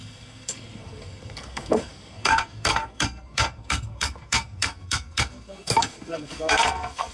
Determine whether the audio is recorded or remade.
remade